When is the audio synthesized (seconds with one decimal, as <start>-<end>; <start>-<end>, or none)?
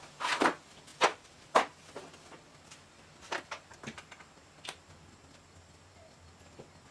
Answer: none